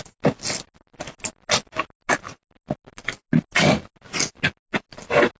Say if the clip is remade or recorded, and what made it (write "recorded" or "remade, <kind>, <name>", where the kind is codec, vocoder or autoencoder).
recorded